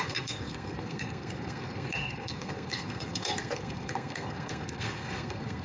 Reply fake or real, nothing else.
fake